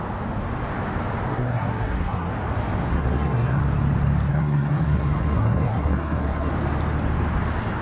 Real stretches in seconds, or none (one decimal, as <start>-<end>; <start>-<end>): 0.0-1.3; 2.3-2.9; 3.6-4.3; 6.5-7.8